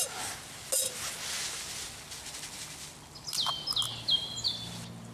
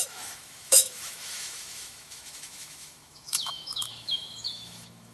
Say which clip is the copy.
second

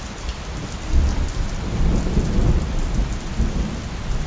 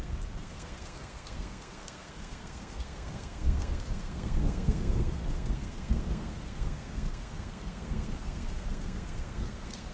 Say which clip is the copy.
second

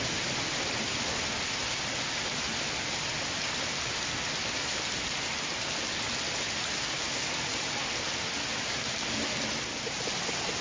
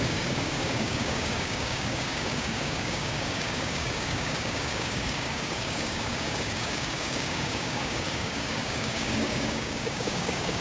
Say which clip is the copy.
second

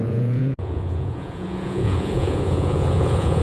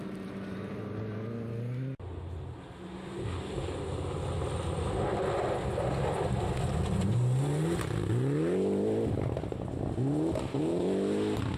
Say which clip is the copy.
first